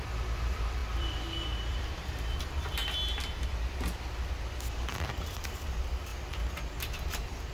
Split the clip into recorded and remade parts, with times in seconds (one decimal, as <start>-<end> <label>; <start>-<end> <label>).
0.0-2.8 remade; 2.8-5.0 recorded; 5.0-6.1 remade; 6.1-7.1 recorded; 7.1-7.5 remade